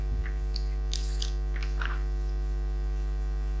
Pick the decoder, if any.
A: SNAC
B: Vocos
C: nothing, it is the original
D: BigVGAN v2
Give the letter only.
C